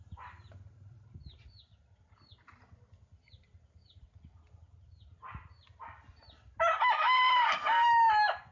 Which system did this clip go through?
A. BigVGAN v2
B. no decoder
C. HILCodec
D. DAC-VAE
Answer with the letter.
B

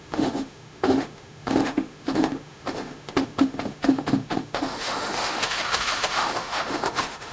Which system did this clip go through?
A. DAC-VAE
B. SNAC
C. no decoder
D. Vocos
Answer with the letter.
A